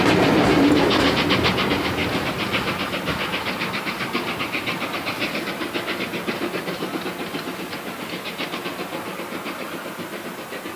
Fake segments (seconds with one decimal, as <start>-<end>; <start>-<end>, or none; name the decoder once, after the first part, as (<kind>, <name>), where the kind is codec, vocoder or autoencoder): none